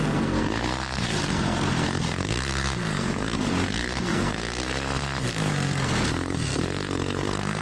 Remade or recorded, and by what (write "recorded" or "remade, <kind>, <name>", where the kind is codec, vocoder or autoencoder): remade, codec, SNAC